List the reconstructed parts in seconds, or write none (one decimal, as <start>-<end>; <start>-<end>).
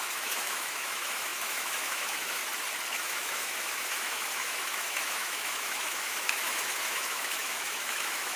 0.0-2.4; 2.9-8.4